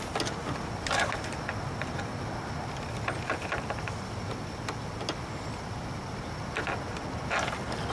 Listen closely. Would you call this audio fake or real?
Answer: real